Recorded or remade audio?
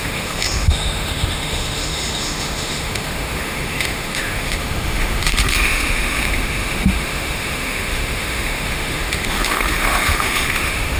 remade